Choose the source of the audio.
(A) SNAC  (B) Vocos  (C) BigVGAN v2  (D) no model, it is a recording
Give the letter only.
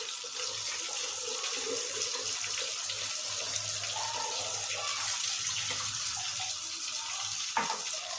D